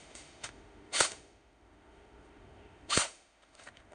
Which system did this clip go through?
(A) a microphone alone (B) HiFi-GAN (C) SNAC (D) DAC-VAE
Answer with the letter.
D